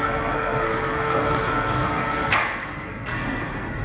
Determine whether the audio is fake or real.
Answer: fake